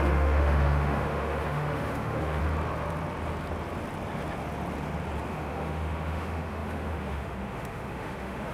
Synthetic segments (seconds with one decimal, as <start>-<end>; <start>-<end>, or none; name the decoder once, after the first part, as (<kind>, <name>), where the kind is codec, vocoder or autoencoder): 0.0-2.4 (autoencoder, DAC-VAE); 5.3-8.5